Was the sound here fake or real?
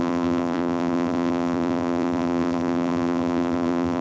fake